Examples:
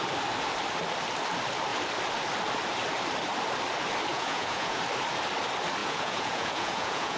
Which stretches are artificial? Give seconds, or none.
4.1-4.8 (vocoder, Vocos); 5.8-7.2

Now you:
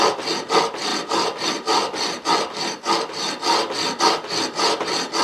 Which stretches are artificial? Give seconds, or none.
none

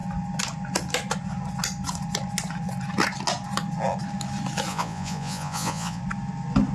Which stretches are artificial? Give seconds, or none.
4.7-6.0 (vocoder, Vocos)

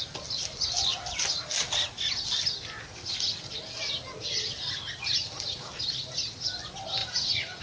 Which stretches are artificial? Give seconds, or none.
7.0-7.6 (vocoder, Vocos)

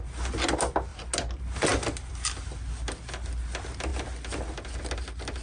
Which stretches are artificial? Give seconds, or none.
none

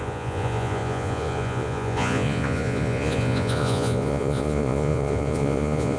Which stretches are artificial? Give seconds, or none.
0.0-6.0 (vocoder, Vocos)